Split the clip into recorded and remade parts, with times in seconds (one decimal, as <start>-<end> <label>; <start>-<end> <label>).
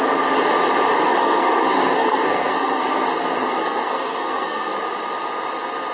0.0-1.2 recorded; 1.2-4.7 remade; 4.7-5.9 recorded